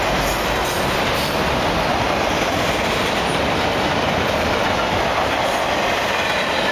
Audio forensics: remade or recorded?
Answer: recorded